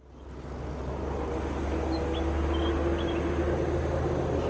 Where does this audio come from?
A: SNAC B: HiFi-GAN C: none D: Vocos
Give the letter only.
C